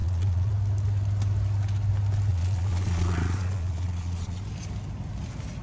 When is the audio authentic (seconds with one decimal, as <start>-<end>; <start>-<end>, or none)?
0.5-2.3; 4.4-5.6

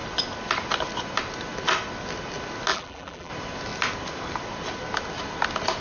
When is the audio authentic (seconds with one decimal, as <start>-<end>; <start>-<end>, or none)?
0.0-2.7; 3.3-5.8

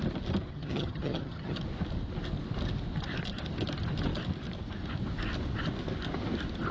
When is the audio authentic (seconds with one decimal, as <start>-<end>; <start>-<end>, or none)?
0.0-0.5; 1.6-6.7